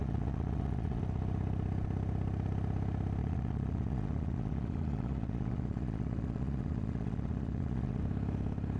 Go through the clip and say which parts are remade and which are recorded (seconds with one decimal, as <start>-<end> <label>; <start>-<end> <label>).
0.0-1.0 remade; 1.0-3.2 recorded; 3.2-8.0 remade; 8.0-8.8 recorded